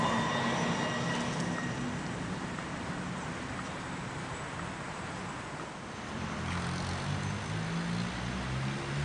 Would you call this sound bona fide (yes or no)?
yes